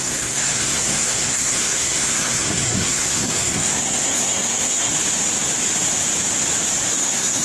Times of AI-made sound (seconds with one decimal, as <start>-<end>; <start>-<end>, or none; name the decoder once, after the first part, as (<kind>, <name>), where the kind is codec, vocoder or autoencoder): 0.0-4.9 (codec, SNAC); 6.9-7.4